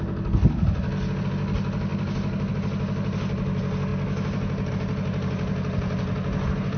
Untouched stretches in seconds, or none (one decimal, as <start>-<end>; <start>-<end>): 0.0-6.8